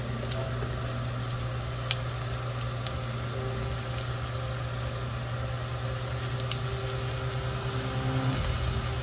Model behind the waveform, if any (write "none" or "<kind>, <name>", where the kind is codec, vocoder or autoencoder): none